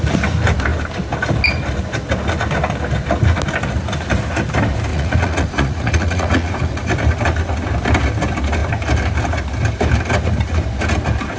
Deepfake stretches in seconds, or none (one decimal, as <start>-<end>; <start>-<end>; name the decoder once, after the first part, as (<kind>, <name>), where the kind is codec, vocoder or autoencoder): 4.9-6.9 (vocoder, Vocos)